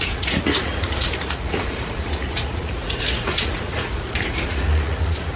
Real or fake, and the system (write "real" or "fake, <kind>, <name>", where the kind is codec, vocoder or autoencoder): fake, vocoder, Vocos